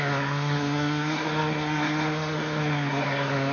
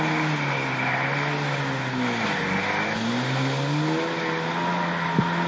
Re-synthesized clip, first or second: first